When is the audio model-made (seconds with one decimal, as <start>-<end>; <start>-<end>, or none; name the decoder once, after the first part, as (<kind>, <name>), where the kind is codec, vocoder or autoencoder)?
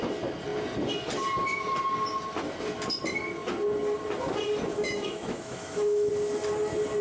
4.7-6.1 (autoencoder, DAC-VAE)